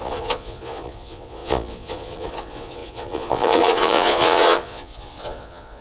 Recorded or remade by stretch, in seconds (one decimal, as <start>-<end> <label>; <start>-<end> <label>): 0.0-5.8 remade